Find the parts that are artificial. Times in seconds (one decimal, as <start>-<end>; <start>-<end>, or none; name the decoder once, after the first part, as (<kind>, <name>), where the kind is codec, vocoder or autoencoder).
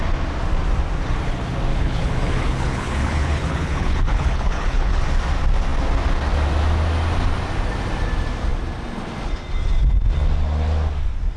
1.7-5.0 (codec, HILCodec)